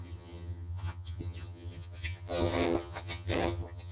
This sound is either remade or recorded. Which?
remade